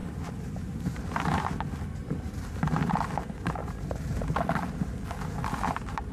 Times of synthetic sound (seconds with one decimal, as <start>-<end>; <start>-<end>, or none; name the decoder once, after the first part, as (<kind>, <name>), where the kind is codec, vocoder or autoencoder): 0.0-1.6 (vocoder, BigVGAN v2); 2.0-3.0; 3.6-4.3